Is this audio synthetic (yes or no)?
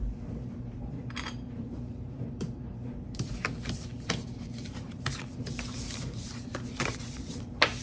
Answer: yes